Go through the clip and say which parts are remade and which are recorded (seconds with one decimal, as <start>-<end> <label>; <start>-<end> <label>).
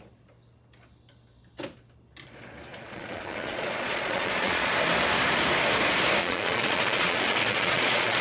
0.0-2.7 recorded; 2.7-4.7 remade; 4.7-6.2 recorded; 6.2-8.2 remade